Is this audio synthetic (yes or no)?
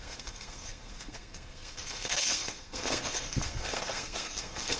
yes